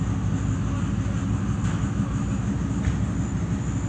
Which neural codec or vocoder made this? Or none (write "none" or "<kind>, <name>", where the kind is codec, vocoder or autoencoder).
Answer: none